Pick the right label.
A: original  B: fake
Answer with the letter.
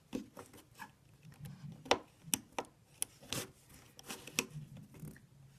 A